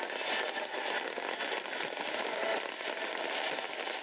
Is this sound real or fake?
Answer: real